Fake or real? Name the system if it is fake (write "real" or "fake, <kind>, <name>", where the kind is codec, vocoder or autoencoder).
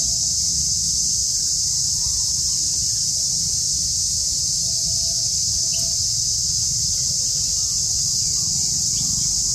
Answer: real